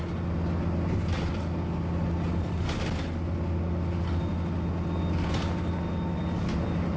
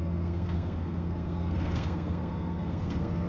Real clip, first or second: first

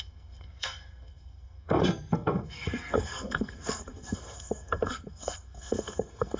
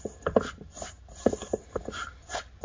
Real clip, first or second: second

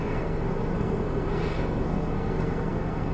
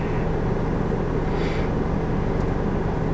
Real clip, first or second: second